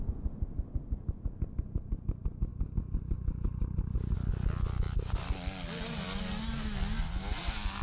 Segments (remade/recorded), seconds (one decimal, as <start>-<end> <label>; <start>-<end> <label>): 0.0-7.8 recorded